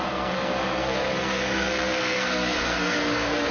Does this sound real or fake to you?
fake